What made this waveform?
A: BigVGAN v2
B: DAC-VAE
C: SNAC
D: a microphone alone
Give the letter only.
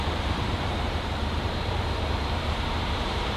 A